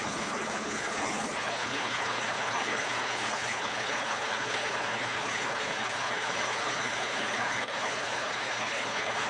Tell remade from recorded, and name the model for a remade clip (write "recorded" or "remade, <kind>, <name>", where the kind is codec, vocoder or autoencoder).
remade, codec, HILCodec